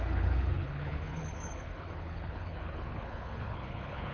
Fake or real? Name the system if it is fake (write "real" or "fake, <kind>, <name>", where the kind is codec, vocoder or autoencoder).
fake, codec, HILCodec